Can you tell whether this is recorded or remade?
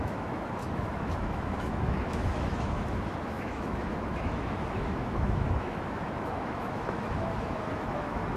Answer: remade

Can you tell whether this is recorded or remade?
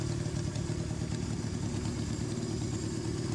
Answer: recorded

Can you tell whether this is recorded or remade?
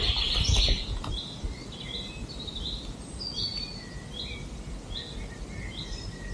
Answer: recorded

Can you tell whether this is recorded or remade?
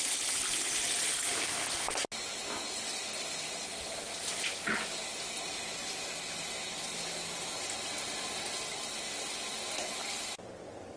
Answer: recorded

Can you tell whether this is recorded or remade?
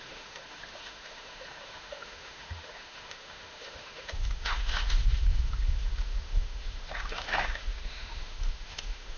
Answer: remade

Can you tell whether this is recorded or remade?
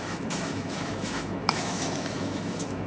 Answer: remade